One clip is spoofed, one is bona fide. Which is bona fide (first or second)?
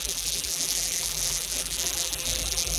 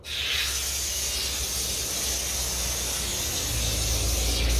second